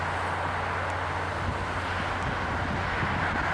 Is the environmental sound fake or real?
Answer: real